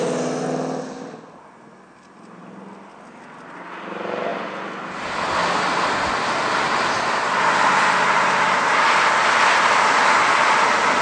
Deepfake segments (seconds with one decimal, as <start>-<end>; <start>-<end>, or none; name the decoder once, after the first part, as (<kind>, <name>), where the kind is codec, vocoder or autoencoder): 2.4-3.0 (vocoder, BigVGAN v2)